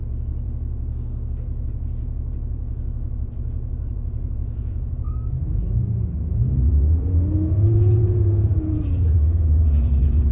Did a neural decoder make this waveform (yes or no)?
yes